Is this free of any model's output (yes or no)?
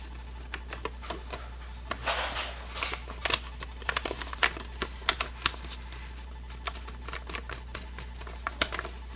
yes